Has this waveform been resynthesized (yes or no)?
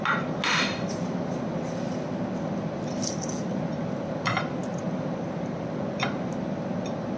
no